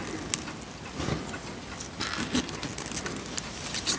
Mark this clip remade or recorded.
recorded